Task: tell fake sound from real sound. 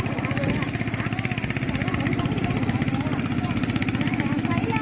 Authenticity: real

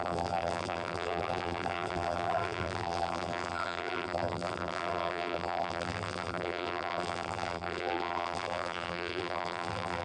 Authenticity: fake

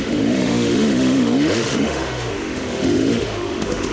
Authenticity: fake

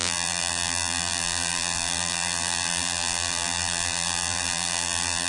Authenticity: fake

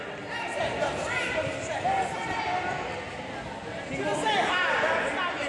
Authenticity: fake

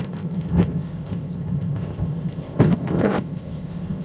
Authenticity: fake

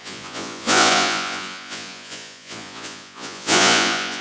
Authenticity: fake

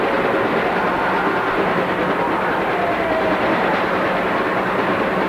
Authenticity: fake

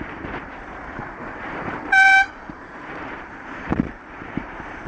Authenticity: fake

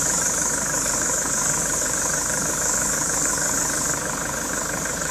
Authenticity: fake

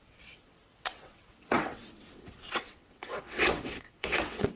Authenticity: fake